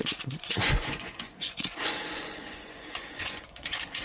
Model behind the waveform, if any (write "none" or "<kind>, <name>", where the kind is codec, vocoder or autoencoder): vocoder, Vocos